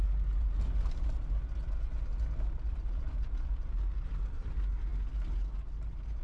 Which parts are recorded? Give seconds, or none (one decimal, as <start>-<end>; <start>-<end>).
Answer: 0.0-6.2